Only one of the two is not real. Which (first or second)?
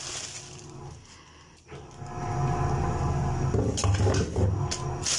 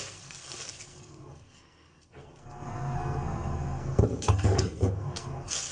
second